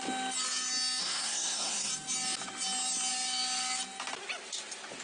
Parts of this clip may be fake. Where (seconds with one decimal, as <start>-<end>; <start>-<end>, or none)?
1.0-1.9